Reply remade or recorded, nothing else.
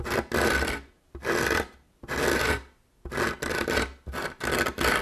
recorded